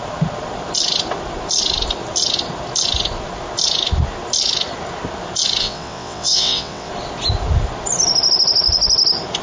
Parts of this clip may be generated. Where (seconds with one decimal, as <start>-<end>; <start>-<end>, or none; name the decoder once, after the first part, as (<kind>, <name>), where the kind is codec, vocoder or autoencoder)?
5.6-6.9 (vocoder, WaveNeXt)

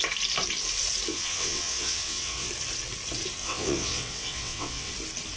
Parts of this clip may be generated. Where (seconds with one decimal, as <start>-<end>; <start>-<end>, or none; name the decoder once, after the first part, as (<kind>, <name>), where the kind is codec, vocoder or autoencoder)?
1.1-2.5 (vocoder, WaveNeXt); 3.4-4.9

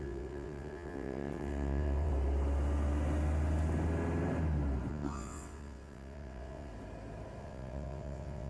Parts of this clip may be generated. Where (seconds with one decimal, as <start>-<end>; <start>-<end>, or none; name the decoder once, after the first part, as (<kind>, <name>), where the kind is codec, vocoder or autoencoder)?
0.0-2.1 (vocoder, WaveNeXt); 4.9-6.7; 7.4-8.5

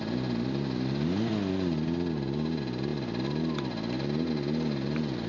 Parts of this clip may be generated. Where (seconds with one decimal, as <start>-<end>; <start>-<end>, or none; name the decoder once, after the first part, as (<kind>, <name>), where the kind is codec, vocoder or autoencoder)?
none

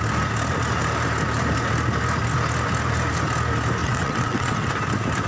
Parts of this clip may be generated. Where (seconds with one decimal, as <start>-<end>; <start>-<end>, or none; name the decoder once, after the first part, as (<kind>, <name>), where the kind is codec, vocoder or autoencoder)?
3.8-4.7 (vocoder, WaveNeXt)

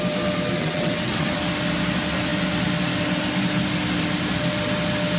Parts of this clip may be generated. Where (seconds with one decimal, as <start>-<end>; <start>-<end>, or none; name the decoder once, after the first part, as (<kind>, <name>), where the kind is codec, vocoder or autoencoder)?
0.6-1.3 (vocoder, WaveNeXt)

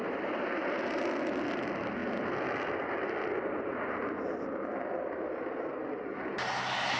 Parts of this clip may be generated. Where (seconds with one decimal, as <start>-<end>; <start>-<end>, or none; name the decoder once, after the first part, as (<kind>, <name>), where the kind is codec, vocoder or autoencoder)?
none